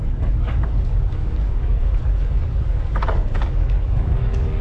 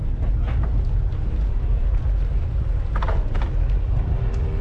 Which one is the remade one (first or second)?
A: first